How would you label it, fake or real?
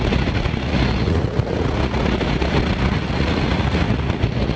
fake